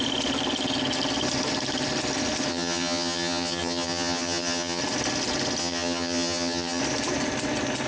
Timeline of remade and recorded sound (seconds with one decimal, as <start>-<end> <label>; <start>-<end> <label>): 0.0-2.5 recorded; 2.5-4.8 remade; 4.8-5.6 recorded; 5.6-6.8 remade; 6.8-7.9 recorded